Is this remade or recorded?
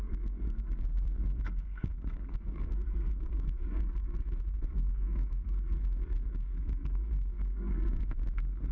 remade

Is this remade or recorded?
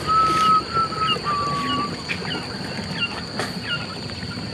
recorded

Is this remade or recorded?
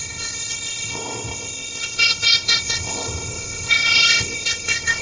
remade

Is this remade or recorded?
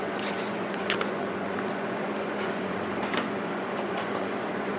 remade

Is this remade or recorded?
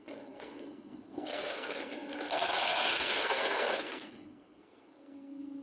remade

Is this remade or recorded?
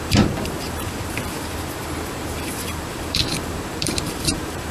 remade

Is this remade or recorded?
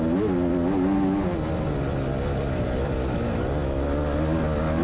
recorded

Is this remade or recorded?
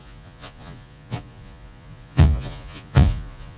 remade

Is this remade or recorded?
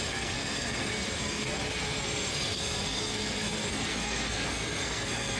remade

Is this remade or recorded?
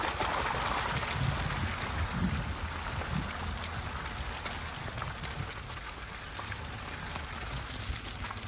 recorded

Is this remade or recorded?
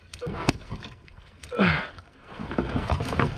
remade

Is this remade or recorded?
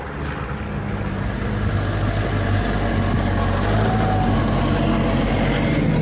recorded